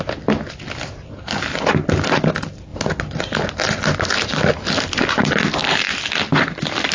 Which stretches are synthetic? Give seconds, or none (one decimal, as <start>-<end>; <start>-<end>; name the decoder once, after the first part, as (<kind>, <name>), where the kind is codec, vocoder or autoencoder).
none

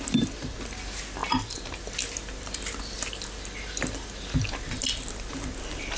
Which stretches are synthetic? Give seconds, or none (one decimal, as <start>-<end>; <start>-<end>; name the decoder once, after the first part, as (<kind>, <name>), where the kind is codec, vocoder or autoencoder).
none

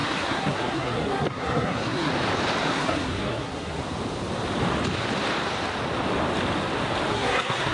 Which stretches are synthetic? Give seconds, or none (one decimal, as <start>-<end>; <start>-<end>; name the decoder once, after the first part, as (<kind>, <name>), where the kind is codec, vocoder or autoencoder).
0.0-2.1 (codec, SNAC); 2.6-3.8; 7.1-7.7

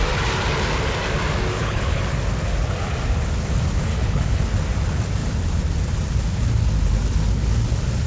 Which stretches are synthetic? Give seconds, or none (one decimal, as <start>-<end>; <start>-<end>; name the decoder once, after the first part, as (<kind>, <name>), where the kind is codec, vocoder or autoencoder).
1.5-2.0 (codec, HILCodec); 3.9-4.4

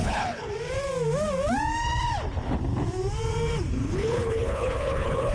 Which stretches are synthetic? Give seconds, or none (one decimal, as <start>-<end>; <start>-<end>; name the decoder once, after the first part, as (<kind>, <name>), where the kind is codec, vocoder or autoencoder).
0.0-0.5 (codec, HILCodec); 3.7-5.3